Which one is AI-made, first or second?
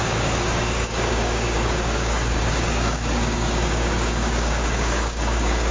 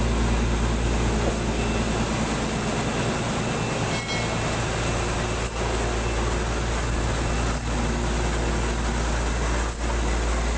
first